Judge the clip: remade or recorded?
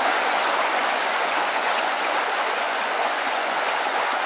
remade